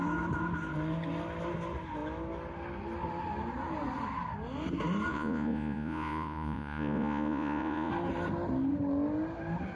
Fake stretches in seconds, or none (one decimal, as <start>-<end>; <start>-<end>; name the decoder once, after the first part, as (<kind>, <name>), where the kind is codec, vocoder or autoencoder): 5.1-7.9 (vocoder, Vocos)